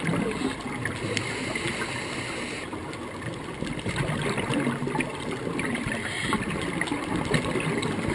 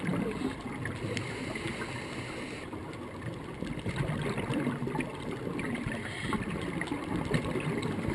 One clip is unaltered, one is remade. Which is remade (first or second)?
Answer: second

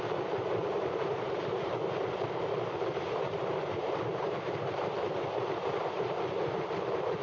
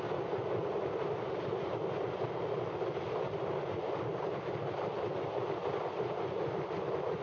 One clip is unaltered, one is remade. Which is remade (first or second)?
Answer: first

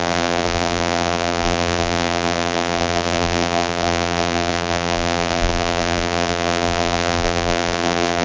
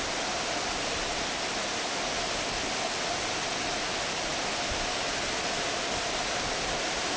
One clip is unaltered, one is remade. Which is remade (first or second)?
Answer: first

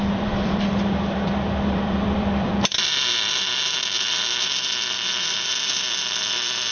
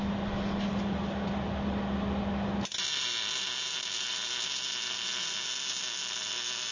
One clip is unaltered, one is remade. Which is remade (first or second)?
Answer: first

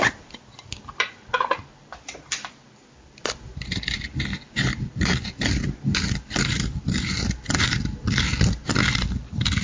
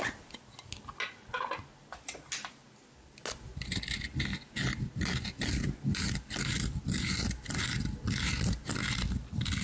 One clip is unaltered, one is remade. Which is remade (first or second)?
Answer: first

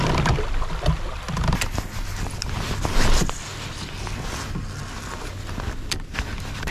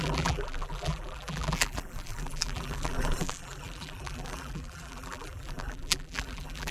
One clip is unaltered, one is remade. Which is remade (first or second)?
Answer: second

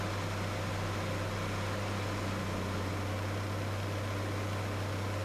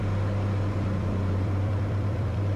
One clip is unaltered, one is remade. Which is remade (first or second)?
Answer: second